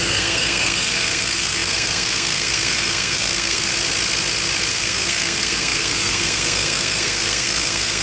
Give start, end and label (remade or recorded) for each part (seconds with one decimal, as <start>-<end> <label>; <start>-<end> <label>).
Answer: 0.0-3.7 remade; 3.7-4.7 recorded; 4.7-8.0 remade

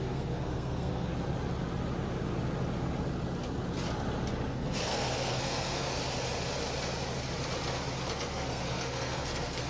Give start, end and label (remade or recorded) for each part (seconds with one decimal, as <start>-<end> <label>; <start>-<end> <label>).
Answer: 0.0-1.1 remade; 1.1-4.5 recorded; 4.5-6.0 remade; 6.0-8.0 recorded; 8.0-9.7 remade

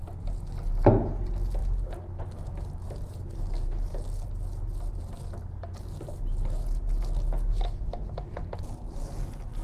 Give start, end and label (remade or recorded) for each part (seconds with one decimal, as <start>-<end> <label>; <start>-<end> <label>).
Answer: 0.0-9.6 recorded

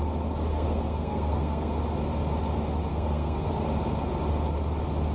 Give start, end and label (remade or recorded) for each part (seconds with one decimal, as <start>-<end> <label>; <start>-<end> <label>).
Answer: 0.0-0.5 recorded; 0.5-1.8 remade; 1.8-2.9 recorded; 2.9-3.5 remade; 3.5-5.1 recorded

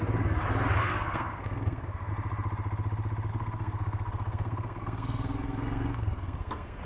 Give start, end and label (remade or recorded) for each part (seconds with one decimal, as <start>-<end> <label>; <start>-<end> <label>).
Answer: 0.0-0.8 recorded; 0.8-2.1 remade; 2.1-3.3 recorded; 3.3-6.8 remade